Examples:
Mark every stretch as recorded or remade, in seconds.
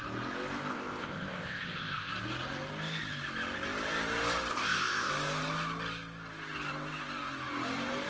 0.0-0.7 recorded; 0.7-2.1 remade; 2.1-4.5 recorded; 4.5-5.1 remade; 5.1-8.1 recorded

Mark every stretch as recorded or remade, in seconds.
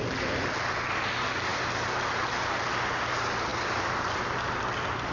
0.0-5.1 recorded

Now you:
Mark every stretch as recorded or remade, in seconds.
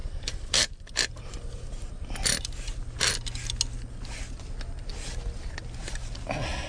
0.0-1.2 remade; 1.2-6.7 recorded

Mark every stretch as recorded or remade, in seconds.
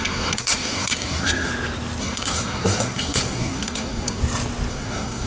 0.0-1.5 remade; 1.5-2.0 recorded; 2.0-4.2 remade; 4.2-4.7 recorded; 4.7-5.3 remade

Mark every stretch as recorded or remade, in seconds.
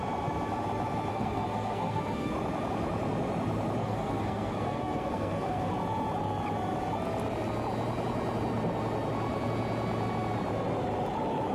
0.0-1.1 recorded; 1.1-2.3 remade; 2.3-3.8 recorded; 3.8-5.7 remade; 5.7-11.5 recorded